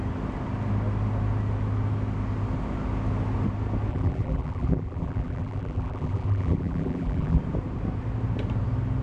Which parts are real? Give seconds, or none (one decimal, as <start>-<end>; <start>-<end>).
0.0-3.9; 7.4-9.0